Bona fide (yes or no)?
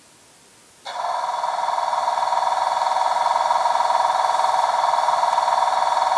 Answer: yes